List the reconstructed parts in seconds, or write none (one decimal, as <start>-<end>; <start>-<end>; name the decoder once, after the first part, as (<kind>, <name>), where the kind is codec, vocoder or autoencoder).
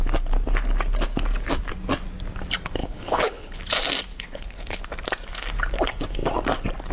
2.8-3.6 (codec, HILCodec); 4.1-4.8